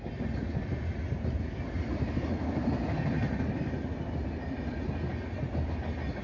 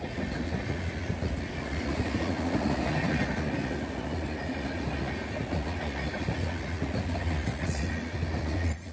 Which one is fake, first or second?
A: second